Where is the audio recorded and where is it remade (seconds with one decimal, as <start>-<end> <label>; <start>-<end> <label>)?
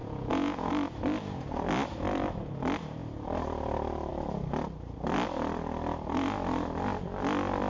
0.0-0.7 remade; 0.7-7.7 recorded